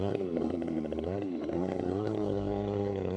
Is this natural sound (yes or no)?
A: no